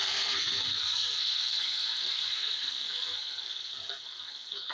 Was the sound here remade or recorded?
remade